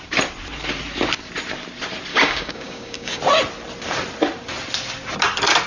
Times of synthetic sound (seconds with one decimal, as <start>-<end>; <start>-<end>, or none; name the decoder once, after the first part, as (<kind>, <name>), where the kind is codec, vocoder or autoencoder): 2.1-3.2 (codec, DAC)